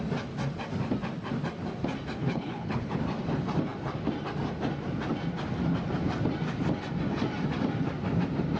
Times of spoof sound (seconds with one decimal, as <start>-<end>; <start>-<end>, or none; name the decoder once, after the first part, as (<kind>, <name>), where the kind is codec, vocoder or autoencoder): 2.2-3.0 (codec, HILCodec)